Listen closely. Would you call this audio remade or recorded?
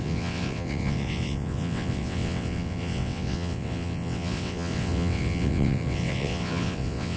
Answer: remade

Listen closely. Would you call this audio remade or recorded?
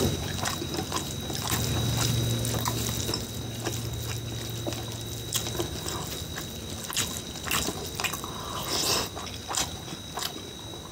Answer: recorded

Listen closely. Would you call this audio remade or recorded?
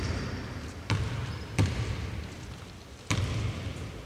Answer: remade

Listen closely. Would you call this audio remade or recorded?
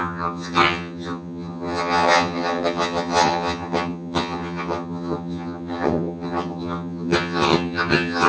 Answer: remade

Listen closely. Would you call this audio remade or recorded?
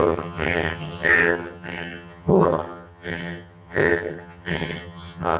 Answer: remade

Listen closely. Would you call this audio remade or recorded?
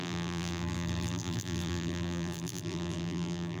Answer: remade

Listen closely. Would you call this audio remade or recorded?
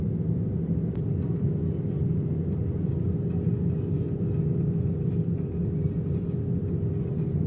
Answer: recorded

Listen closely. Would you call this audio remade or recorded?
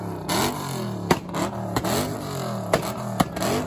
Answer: recorded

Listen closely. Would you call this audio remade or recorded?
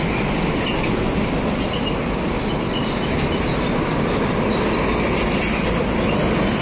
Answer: recorded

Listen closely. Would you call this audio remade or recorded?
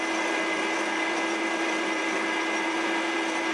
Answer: recorded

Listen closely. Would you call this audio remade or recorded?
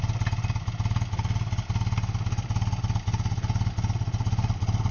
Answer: recorded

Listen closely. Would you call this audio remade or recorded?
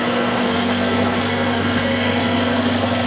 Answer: remade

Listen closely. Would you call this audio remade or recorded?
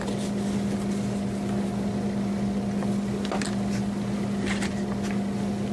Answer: recorded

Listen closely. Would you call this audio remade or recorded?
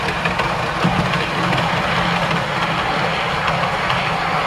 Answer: recorded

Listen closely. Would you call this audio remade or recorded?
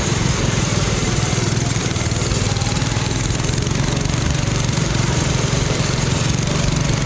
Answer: remade